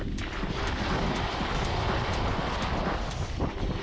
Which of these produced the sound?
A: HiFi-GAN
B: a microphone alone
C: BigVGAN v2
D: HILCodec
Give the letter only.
B